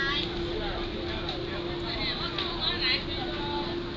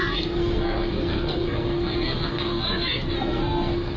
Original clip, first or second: first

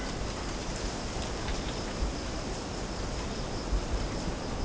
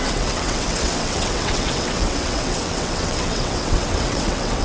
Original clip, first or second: first